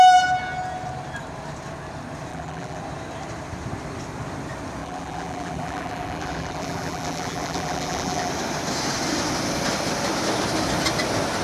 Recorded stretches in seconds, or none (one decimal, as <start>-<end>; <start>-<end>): 0.0-2.3; 2.8-4.8; 8.3-11.4